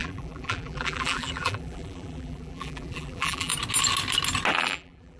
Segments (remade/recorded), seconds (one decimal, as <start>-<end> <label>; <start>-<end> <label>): 0.0-3.5 remade; 3.5-4.5 recorded; 4.5-5.2 remade